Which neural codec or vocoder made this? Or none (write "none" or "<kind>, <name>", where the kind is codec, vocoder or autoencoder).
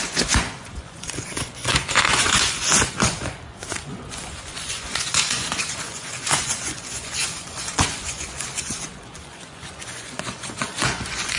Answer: vocoder, Vocos